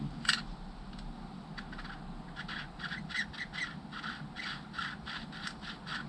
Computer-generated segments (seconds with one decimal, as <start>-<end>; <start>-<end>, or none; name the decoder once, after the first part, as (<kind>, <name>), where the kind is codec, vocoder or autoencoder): none